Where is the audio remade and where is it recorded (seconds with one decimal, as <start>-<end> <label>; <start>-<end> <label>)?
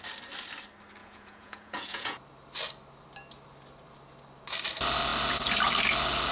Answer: 0.0-1.0 recorded; 1.0-2.2 remade; 2.2-6.3 recorded